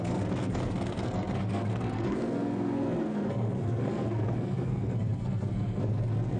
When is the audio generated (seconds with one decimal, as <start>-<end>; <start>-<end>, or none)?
0.0-6.4

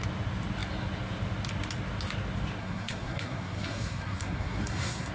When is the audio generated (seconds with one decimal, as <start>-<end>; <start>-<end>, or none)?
2.6-5.1